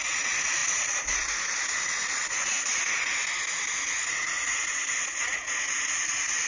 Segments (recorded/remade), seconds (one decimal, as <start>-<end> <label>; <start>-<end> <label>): 0.0-3.2 remade; 3.2-3.8 recorded; 3.8-6.5 remade